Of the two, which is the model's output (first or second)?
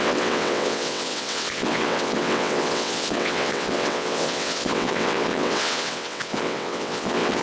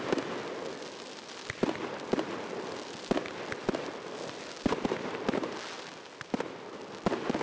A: first